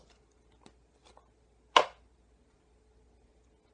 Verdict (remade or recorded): recorded